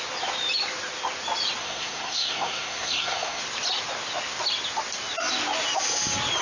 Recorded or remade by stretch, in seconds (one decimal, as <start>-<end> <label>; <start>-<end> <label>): 0.0-1.6 recorded; 1.6-3.4 remade; 3.4-6.4 recorded